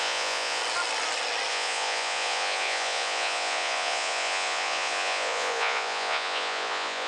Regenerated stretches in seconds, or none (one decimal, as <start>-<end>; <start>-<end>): 0.0-0.6; 1.5-7.1